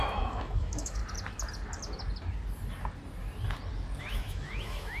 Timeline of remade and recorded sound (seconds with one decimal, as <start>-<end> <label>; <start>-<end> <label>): 0.0-1.0 remade; 1.0-4.0 recorded; 4.0-5.0 remade